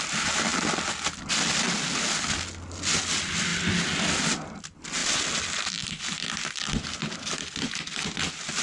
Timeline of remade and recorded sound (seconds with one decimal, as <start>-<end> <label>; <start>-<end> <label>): 0.0-8.6 recorded